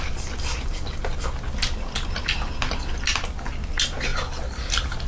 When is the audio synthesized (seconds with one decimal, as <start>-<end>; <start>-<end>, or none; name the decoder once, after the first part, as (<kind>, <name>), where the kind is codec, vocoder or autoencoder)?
4.1-5.1 (vocoder, BigVGAN v2)